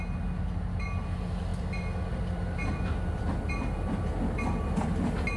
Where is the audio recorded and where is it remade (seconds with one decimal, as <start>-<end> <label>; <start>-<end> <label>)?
0.0-2.6 recorded; 2.6-3.3 remade; 3.3-5.4 recorded